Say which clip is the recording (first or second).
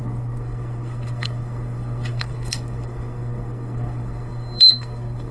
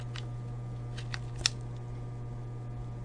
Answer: second